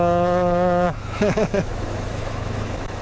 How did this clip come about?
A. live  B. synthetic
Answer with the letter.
B